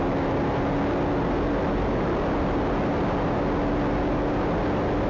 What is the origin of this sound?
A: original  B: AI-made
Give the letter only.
A